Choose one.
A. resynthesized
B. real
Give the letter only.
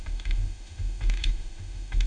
A